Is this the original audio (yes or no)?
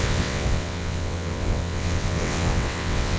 no